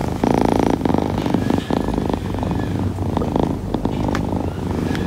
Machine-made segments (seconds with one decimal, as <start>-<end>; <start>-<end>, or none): none